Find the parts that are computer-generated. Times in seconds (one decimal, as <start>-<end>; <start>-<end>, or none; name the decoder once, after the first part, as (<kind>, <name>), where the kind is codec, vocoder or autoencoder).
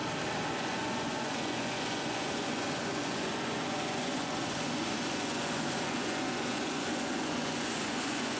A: 0.5-8.4 (vocoder, Vocos)